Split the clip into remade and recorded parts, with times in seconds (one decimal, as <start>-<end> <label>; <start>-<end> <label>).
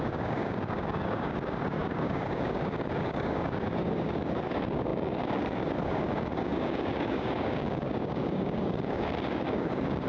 0.0-10.1 remade